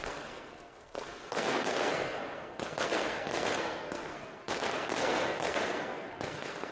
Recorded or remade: remade